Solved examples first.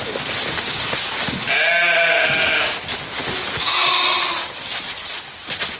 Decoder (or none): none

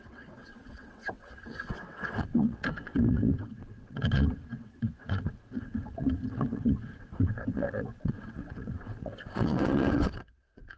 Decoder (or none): vocoder, WaveNeXt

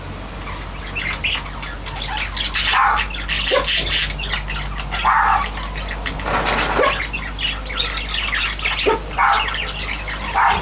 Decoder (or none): none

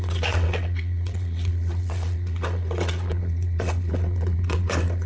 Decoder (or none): vocoder, WaveNeXt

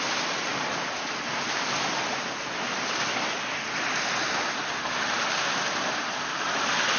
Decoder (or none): none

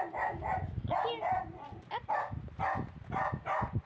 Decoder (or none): none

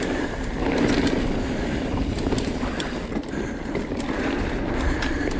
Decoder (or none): none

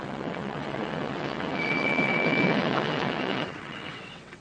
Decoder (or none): vocoder, WaveNeXt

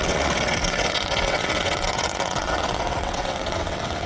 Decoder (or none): vocoder, WaveNeXt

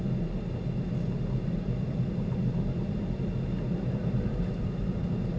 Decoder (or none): none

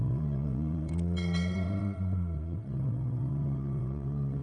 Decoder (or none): vocoder, WaveNeXt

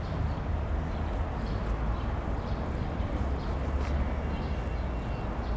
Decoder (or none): none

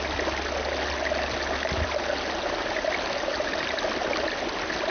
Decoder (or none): none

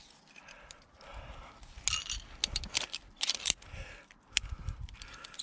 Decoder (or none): none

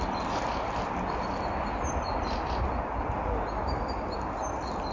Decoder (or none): none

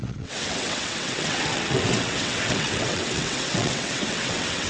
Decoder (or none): vocoder, WaveNeXt